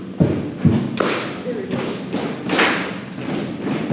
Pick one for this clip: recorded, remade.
recorded